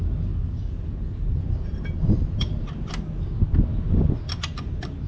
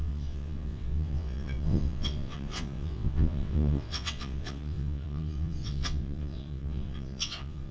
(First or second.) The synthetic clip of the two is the second